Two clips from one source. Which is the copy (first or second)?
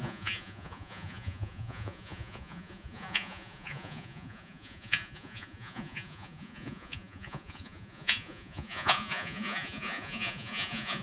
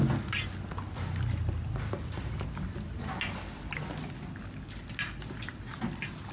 first